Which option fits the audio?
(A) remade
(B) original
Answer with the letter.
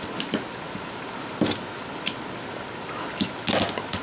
B